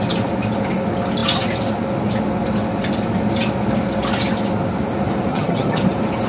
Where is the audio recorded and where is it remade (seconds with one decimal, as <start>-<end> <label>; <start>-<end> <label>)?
0.0-5.3 recorded; 5.3-5.8 remade; 5.8-6.3 recorded